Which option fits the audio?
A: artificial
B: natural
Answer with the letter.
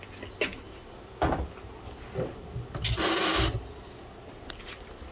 B